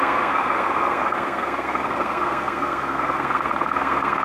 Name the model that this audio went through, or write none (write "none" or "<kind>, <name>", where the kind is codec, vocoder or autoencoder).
codec, SNAC